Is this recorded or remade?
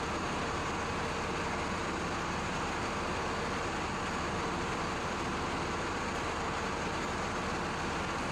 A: recorded